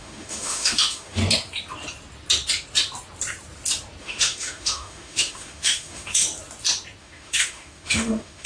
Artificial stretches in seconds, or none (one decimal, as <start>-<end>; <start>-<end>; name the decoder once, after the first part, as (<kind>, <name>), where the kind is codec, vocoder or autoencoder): 0.0-1.2 (autoencoder, DAC-VAE); 4.0-6.3; 7.0-8.5